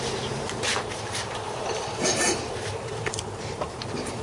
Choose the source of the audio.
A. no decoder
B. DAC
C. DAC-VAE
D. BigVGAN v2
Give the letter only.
D